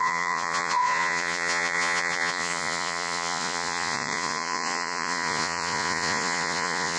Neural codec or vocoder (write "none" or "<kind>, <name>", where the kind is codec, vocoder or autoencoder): vocoder, Vocos